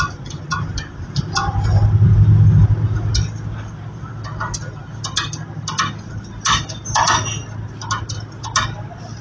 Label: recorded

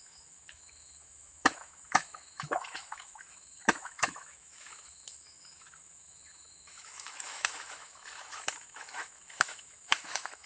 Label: remade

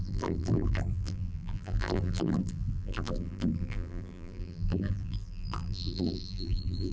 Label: remade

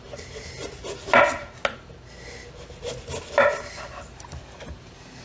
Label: recorded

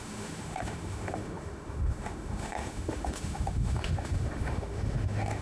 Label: remade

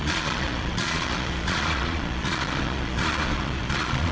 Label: remade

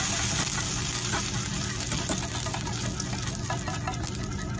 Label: recorded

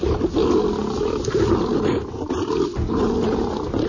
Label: recorded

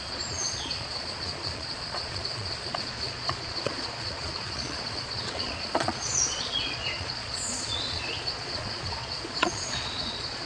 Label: remade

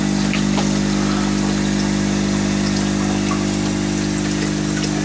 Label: recorded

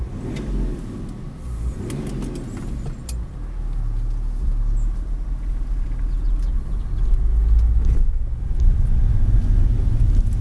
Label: recorded